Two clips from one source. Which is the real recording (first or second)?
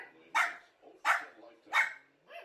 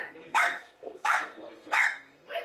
first